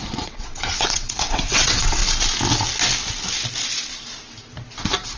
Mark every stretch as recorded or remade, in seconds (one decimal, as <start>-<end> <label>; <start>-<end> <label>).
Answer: 0.0-2.0 remade; 2.0-5.2 recorded